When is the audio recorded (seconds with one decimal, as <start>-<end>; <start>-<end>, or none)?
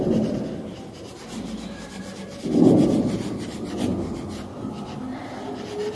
0.0-5.9